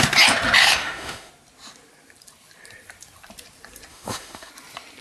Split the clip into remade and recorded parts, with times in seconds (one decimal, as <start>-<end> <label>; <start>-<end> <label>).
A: 0.0-0.6 recorded; 0.6-1.3 remade; 1.3-3.9 recorded; 3.9-4.5 remade; 4.5-5.0 recorded